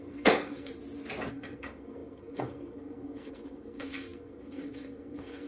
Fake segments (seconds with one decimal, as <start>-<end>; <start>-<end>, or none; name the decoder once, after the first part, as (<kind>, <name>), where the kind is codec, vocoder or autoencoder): 0.0-0.7 (codec, SNAC); 1.3-5.5